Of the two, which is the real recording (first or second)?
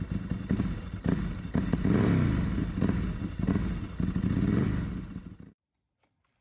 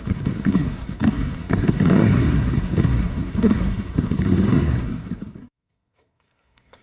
first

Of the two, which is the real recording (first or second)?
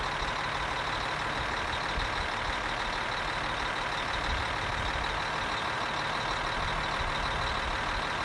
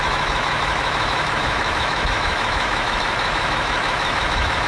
first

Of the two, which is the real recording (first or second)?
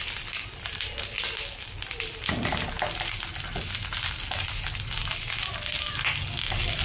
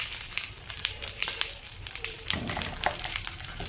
first